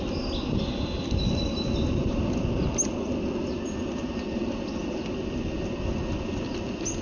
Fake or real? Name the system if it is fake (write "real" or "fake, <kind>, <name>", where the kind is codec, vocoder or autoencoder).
real